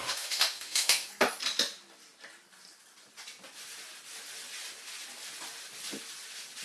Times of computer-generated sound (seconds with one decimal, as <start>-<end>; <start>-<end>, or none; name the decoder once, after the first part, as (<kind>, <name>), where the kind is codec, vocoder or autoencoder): 0.0-1.1 (autoencoder, DAC-VAE)